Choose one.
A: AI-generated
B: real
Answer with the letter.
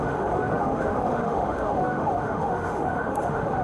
A